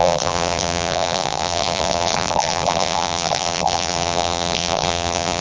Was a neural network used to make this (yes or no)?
yes